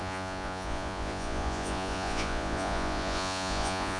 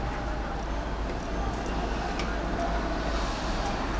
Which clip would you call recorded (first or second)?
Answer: second